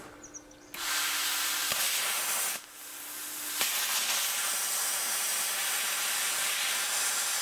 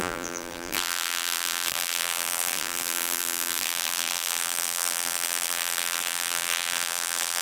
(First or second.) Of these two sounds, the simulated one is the second